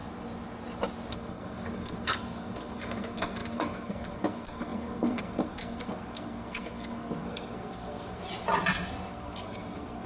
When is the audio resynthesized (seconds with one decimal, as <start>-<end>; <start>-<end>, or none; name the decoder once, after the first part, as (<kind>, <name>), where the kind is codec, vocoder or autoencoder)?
1.1-8.2 (codec, SNAC); 9.1-10.1